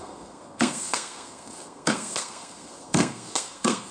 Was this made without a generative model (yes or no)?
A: no